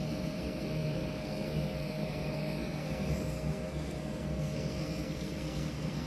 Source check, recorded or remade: remade